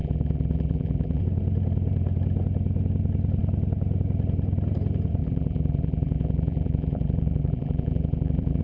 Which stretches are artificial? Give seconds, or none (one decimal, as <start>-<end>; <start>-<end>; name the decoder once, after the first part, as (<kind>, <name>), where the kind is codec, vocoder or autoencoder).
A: 0.0-1.2 (vocoder, BigVGAN v2); 5.2-8.6

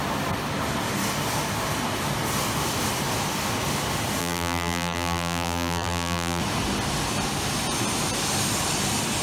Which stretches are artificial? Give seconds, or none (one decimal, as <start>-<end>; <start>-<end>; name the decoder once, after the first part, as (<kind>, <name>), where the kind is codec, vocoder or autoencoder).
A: 4.2-6.4 (vocoder, BigVGAN v2)

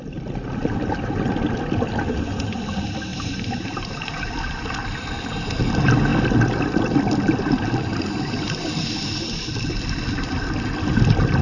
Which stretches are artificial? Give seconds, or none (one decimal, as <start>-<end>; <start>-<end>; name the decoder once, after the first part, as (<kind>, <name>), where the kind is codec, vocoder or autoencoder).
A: 3.1-4.3 (vocoder, BigVGAN v2)

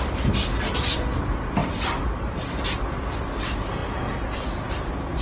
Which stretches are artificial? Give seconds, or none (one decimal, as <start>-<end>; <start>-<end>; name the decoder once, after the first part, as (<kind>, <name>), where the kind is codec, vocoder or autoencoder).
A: none

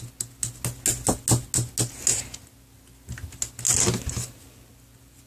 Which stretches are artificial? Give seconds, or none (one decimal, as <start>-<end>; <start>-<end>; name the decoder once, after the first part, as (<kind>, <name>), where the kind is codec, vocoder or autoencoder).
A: none

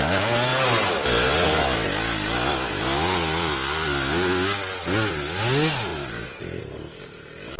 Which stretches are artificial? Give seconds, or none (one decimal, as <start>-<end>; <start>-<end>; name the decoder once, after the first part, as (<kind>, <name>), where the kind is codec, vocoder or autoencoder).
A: 5.9-6.6 (vocoder, BigVGAN v2)